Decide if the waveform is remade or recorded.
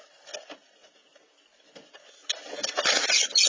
recorded